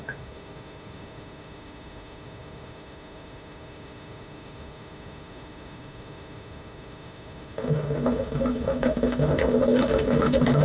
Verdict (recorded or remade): remade